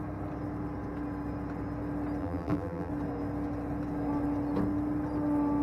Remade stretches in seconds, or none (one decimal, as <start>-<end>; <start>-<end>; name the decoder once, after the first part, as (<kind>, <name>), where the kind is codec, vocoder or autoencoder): 2.2-2.9 (vocoder, BigVGAN v2)